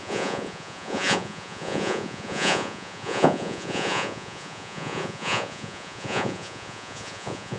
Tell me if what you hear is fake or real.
fake